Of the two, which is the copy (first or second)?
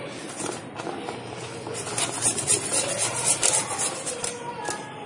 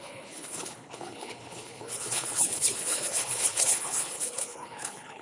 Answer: second